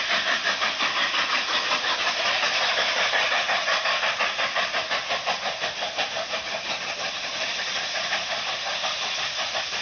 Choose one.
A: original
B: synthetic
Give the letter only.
A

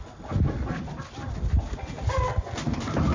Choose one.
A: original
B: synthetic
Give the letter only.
A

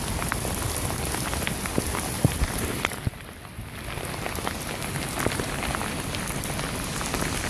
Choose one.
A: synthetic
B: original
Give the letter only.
B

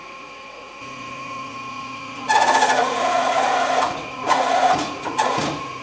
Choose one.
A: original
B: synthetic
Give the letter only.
B